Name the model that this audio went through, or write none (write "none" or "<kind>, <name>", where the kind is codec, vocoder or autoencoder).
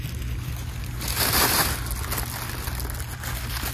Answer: none